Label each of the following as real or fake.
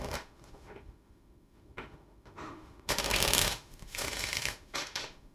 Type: fake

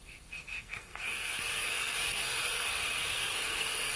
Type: fake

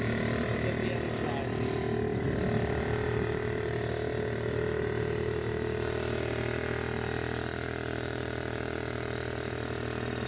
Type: real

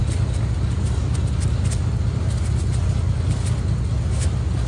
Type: real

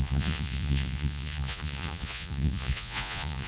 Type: fake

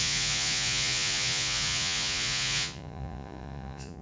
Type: fake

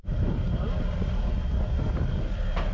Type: real